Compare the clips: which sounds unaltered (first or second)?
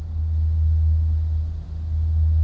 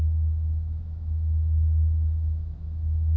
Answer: first